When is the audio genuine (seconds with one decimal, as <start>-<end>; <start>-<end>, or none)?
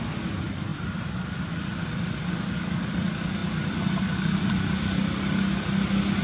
0.0-6.2